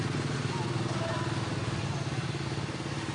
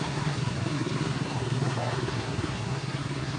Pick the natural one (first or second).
first